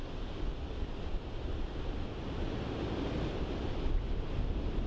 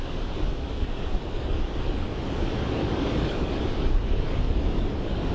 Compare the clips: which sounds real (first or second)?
first